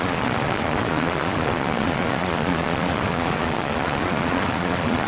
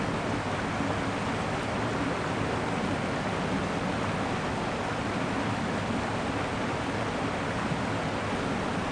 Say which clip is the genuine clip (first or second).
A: second